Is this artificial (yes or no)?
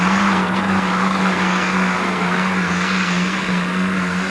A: yes